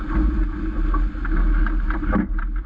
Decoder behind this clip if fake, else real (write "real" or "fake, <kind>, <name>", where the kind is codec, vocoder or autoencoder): real